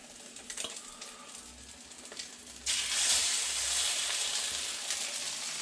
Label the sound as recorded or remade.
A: recorded